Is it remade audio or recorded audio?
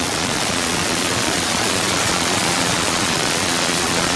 remade